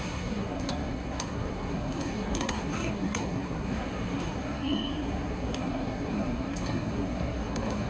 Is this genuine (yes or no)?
no